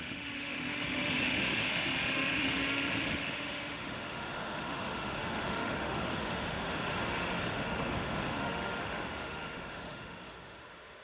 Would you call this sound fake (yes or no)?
yes